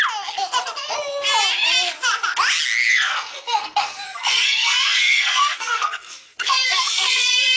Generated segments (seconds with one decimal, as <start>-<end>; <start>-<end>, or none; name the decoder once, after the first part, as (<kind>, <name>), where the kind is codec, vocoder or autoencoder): 2.9-7.6 (codec, SNAC)